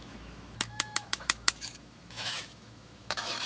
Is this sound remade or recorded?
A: remade